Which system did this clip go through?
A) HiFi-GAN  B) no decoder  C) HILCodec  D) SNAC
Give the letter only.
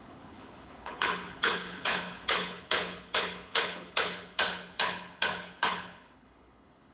C